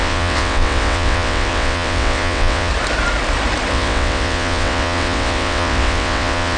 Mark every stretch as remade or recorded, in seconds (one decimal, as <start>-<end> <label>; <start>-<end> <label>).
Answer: 0.0-2.7 remade; 2.7-3.7 recorded; 3.7-6.6 remade